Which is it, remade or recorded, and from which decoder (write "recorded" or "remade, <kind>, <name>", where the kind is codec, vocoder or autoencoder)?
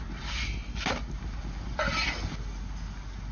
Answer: recorded